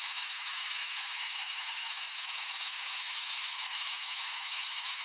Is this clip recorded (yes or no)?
no